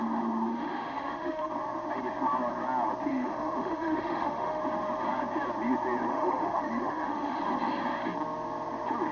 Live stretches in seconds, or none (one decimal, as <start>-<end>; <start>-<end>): 0.0-0.5; 1.5-3.1; 4.6-6.1; 7.4-9.1